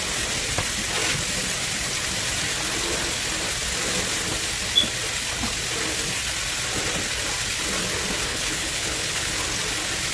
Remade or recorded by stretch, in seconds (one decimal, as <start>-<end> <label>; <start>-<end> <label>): 0.0-8.3 recorded; 8.3-9.3 remade; 9.3-10.1 recorded